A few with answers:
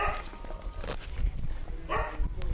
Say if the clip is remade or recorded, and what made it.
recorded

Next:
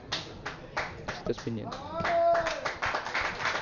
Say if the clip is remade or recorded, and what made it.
recorded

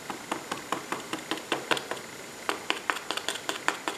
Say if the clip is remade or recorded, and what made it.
recorded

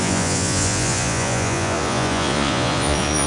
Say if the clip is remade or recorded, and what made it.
remade, vocoder, Vocos